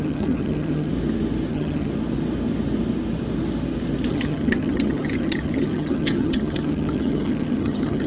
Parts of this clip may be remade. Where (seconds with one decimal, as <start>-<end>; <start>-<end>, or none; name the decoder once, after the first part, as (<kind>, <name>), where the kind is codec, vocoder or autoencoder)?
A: 0.0-0.9 (vocoder, HiFi-GAN); 1.5-1.9; 4.1-8.1